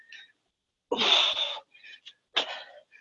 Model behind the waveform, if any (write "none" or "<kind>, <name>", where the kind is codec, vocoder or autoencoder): none